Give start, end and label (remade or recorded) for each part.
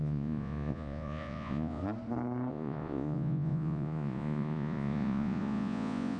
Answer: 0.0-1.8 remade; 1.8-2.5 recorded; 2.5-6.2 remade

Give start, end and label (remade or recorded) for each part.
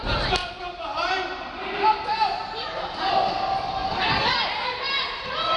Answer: 0.0-0.4 recorded; 0.4-3.1 remade; 3.1-3.8 recorded; 3.8-5.6 remade